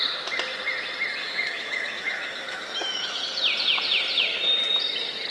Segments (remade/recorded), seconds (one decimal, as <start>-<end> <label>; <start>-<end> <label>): 0.0-1.2 recorded; 1.2-3.2 remade; 3.2-5.3 recorded